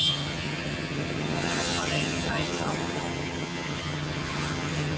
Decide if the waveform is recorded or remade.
remade